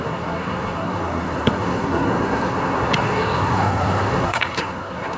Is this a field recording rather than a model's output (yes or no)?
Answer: no